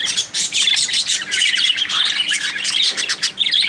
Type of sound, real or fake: real